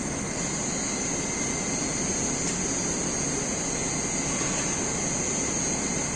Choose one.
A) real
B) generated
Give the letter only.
A